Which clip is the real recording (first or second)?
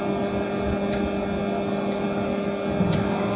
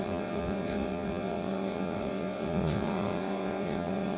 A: first